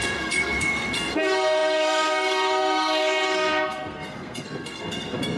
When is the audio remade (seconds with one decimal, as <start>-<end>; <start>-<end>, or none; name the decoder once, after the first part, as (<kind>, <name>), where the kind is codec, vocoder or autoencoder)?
0.0-5.4 (codec, SNAC)